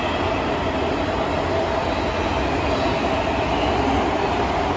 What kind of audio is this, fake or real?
real